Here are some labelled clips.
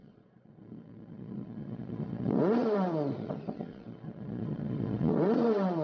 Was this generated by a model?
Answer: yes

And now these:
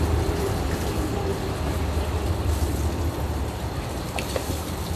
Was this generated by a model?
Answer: no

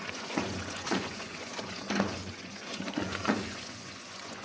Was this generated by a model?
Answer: yes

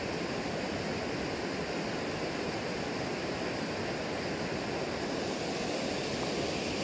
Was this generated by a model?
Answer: no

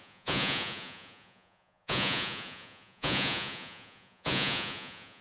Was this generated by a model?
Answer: yes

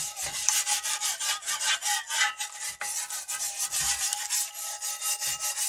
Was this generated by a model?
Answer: no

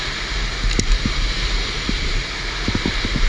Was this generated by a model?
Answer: no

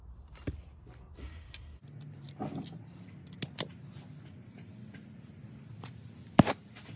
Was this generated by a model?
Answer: no